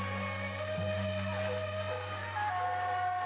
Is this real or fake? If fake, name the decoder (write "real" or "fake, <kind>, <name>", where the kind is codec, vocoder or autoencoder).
real